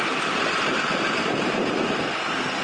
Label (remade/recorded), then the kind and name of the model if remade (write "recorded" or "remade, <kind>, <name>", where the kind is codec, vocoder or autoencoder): recorded